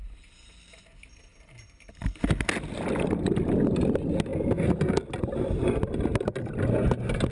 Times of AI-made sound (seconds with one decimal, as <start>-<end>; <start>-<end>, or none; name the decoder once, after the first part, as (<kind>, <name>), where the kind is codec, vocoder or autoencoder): none